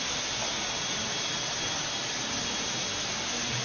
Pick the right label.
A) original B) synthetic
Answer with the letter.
A